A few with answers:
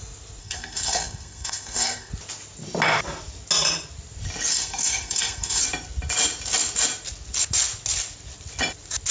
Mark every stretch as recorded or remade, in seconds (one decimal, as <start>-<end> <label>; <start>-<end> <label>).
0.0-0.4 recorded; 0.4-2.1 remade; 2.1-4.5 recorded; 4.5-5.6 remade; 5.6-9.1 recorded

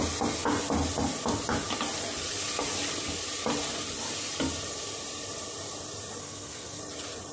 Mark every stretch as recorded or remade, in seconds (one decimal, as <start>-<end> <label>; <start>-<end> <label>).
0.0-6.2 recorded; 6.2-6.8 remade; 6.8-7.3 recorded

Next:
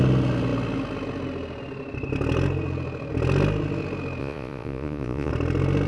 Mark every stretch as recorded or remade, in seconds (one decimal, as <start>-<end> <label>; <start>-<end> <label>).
0.0-4.2 recorded; 4.2-5.3 remade; 5.3-5.9 recorded